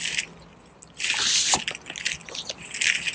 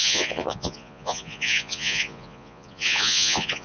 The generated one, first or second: second